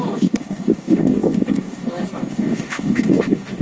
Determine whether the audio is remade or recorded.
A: remade